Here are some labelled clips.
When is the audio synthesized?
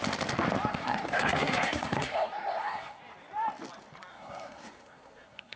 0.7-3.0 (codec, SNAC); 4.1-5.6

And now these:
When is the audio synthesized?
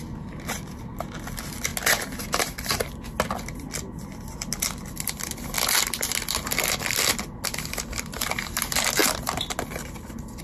none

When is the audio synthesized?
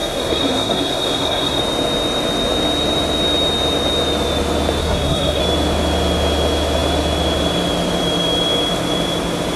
0.0-1.6 (codec, SNAC); 4.8-5.4